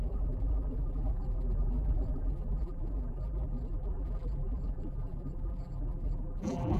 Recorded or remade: remade